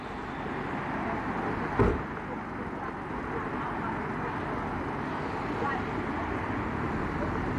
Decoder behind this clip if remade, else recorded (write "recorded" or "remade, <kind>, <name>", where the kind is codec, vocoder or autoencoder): recorded